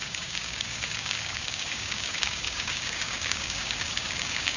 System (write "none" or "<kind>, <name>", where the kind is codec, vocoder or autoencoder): codec, DAC